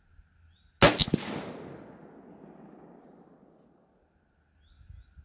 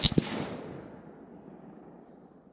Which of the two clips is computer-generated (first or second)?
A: second